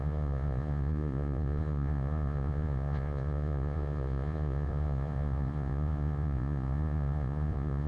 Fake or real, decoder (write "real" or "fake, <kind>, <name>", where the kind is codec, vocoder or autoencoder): fake, vocoder, Vocos